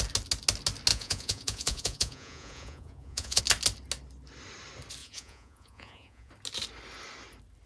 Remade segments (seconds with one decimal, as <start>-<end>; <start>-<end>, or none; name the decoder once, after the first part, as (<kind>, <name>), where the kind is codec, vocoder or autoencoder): 0.9-3.4 (vocoder, Vocos); 5.0-6.3